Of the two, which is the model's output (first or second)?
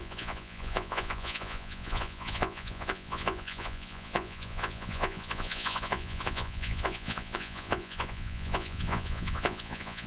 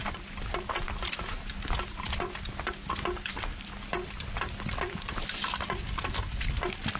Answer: first